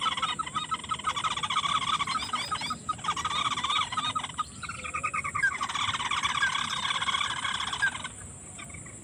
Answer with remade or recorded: recorded